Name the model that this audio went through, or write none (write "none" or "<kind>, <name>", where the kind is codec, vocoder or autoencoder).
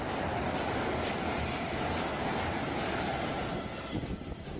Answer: none